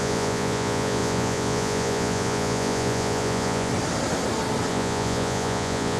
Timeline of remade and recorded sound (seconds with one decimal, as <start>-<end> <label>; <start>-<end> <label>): 0.0-3.7 remade; 3.7-4.7 recorded; 4.7-6.0 remade